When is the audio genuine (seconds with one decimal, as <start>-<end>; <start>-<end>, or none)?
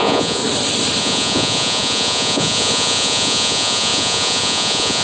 0.4-1.0